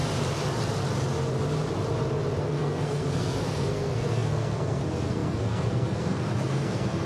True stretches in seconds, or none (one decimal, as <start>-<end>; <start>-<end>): 0.0-2.4